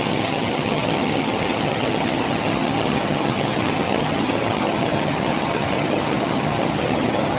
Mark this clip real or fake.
fake